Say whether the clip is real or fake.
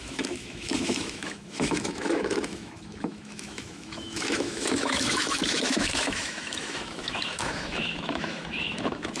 fake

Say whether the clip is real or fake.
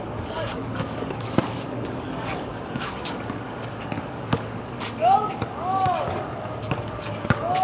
fake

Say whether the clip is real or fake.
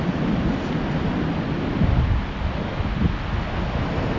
real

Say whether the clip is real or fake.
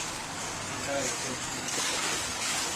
fake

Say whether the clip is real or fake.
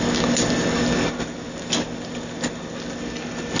real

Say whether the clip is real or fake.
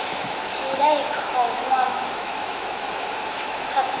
fake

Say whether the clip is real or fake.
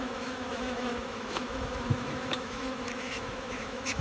fake